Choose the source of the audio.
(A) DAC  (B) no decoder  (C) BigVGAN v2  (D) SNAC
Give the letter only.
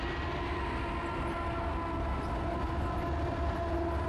B